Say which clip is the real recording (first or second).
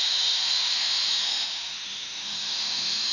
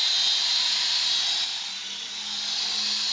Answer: second